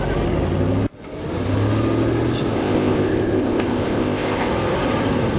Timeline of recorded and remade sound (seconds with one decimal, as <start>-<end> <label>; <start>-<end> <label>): 0.0-2.5 recorded; 2.5-4.5 remade; 4.5-5.4 recorded